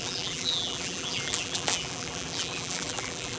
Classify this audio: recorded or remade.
remade